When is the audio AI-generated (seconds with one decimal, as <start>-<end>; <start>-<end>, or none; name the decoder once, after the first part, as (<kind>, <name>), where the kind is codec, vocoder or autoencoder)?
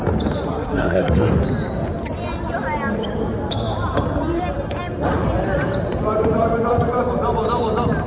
0.5-1.3 (codec, SNAC)